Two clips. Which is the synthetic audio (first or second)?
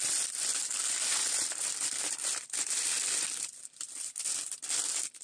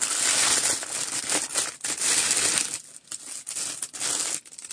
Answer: first